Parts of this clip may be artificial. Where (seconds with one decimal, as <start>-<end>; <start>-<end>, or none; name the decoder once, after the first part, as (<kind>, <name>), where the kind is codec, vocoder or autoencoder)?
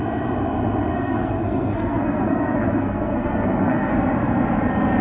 0.9-3.9 (codec, SNAC)